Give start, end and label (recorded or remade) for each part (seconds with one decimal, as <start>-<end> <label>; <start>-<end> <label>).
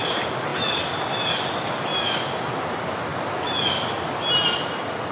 0.0-5.1 recorded